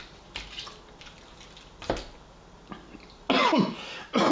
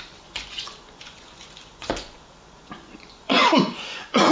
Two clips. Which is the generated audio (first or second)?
second